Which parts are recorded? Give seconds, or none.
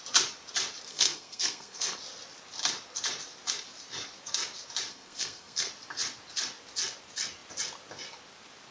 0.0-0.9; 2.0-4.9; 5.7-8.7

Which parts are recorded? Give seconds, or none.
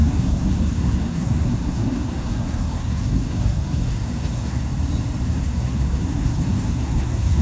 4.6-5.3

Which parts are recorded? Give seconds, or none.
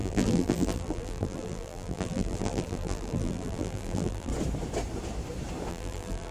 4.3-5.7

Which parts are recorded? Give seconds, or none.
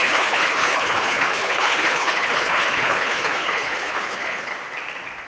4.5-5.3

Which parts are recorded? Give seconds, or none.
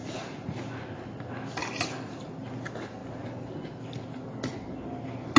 0.0-5.4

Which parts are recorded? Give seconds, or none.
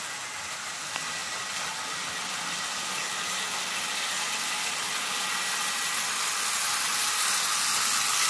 0.0-8.3